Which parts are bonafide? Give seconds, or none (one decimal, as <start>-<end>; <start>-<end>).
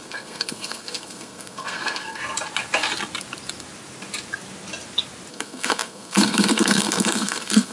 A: 2.2-5.3